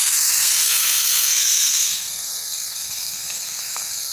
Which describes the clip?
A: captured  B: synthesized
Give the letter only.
B